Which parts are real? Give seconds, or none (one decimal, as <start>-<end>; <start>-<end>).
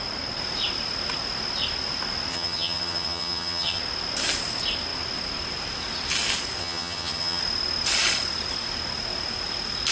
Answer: 0.0-2.3; 3.8-6.6; 7.4-9.9